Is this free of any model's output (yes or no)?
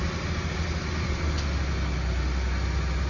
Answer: yes